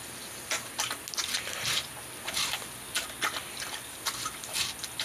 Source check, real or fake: real